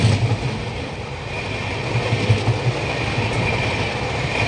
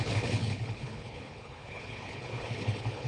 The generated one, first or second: second